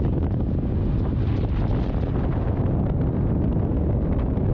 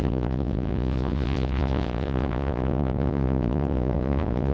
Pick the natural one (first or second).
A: first